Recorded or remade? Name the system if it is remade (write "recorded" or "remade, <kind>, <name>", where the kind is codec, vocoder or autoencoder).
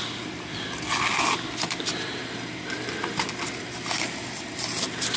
recorded